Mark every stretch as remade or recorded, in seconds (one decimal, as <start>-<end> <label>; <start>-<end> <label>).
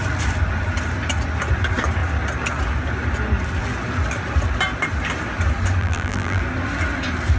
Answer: 0.0-5.8 recorded; 5.8-6.4 remade; 6.4-7.4 recorded